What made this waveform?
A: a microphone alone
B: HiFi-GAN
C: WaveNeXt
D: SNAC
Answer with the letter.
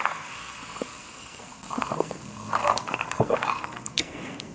D